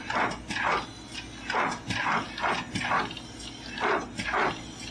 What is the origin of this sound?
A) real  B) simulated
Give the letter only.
A